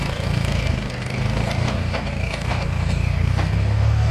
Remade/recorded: remade